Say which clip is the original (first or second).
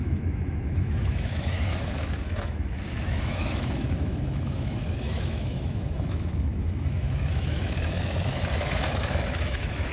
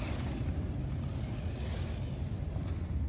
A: second